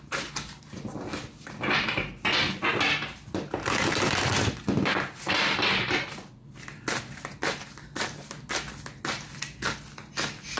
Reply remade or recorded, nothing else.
recorded